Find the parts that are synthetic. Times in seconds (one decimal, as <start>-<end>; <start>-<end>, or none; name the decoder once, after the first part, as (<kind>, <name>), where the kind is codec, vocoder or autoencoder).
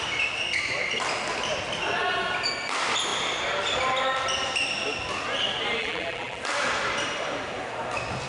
5.8-6.4 (vocoder, BigVGAN v2)